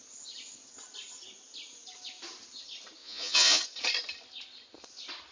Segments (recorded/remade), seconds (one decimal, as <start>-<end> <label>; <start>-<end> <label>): 0.0-3.0 recorded; 3.0-3.6 remade; 3.6-5.3 recorded